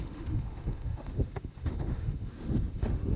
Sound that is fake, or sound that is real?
fake